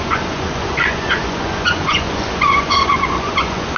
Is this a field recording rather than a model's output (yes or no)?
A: no